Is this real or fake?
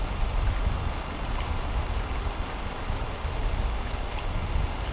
real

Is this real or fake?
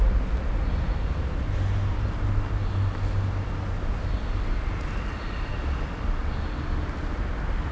real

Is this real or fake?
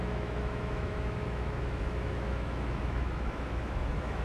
fake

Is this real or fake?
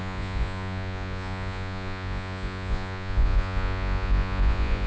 fake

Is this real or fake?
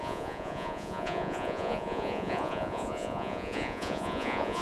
fake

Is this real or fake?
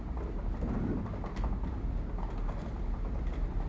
real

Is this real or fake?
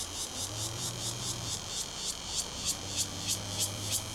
fake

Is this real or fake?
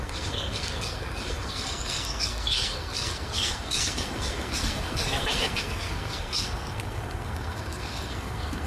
fake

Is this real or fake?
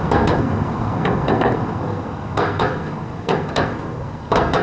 fake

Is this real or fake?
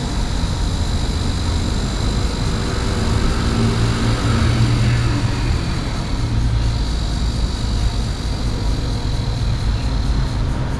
real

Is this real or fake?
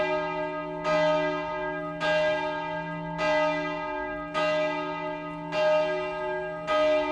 real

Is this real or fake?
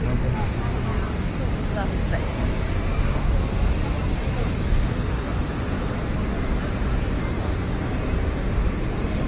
real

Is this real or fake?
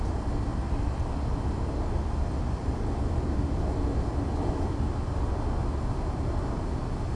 real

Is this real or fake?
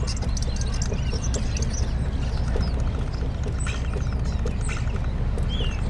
real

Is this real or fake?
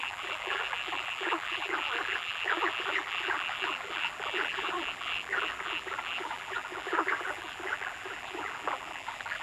fake